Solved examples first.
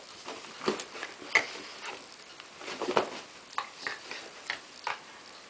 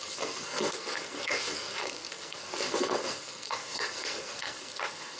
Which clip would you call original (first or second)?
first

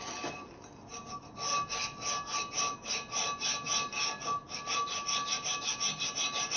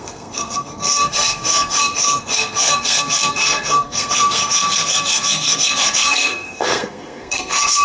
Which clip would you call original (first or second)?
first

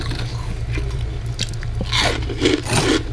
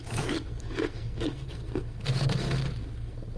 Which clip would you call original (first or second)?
first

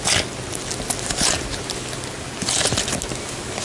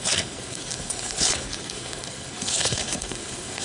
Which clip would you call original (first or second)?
first